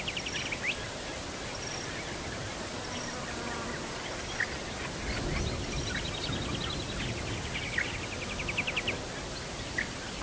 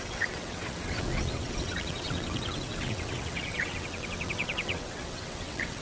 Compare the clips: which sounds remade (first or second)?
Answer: second